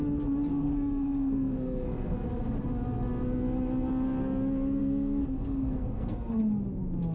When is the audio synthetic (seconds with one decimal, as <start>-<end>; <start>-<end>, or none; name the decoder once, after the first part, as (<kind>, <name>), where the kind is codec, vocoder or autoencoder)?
0.5-2.4 (codec, SNAC); 4.8-6.4